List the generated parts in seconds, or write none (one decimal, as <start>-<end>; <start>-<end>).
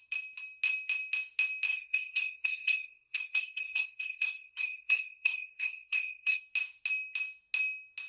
1.7-6.4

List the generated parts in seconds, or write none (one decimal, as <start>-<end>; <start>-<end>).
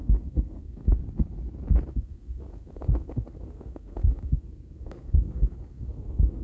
0.0-1.0; 1.9-6.4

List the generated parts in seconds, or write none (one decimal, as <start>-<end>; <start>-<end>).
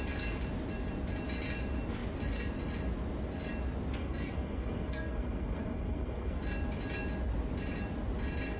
4.0-6.4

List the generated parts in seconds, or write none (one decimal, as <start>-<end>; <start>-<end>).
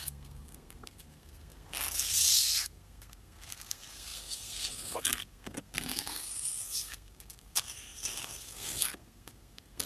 0.0-9.9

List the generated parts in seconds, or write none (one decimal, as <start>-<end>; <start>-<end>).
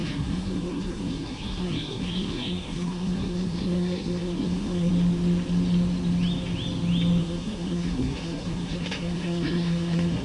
0.0-4.9; 7.2-10.2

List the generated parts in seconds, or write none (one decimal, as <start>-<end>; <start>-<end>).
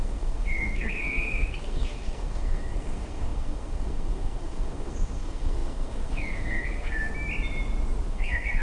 0.0-7.1; 8.1-8.6